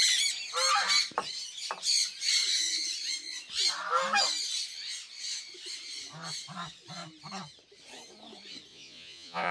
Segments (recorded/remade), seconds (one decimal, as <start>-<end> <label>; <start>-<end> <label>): 0.0-8.7 recorded; 8.7-9.5 remade